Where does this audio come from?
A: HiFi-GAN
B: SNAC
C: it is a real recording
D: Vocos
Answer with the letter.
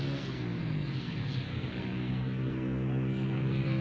B